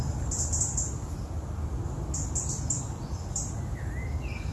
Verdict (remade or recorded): recorded